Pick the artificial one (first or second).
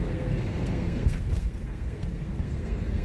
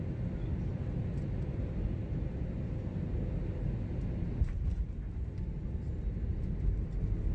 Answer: first